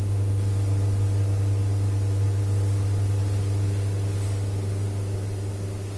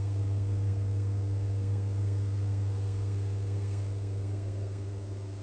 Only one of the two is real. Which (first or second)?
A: first